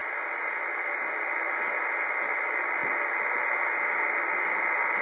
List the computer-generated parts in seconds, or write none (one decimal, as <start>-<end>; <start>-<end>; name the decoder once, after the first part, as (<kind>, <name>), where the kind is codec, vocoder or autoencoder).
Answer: none